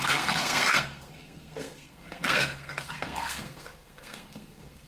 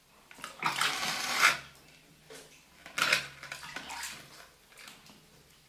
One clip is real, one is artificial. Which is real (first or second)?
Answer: second